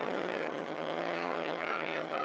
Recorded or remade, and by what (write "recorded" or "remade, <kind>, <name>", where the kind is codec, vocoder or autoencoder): remade, vocoder, HiFi-GAN